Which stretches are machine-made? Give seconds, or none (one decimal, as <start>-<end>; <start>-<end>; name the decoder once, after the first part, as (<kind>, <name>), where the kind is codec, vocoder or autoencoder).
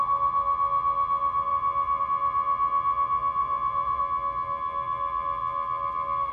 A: 3.4-4.0 (vocoder, Vocos)